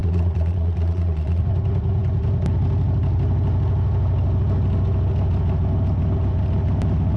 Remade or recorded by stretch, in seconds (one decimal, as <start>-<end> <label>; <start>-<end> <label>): 0.0-1.4 remade; 1.4-7.2 recorded